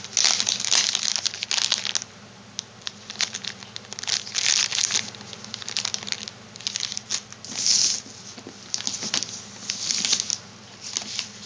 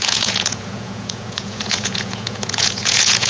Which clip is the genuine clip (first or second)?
first